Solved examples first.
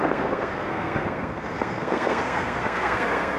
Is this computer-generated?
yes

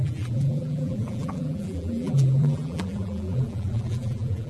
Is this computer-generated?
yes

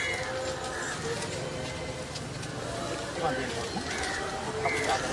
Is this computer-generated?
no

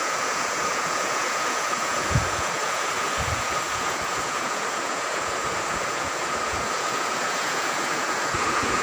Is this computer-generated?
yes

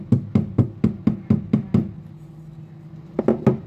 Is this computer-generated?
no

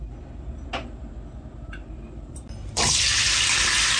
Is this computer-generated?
no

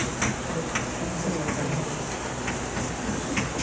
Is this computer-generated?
no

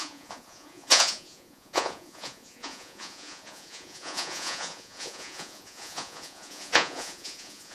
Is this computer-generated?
yes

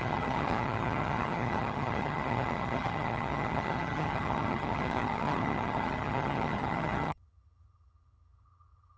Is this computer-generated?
yes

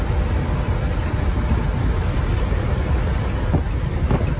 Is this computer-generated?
no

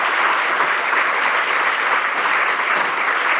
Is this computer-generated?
yes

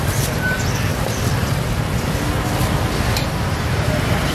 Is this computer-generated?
no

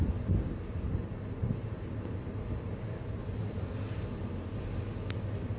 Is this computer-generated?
no